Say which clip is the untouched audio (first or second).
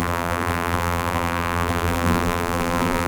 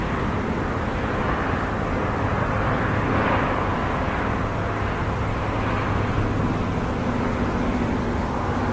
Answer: second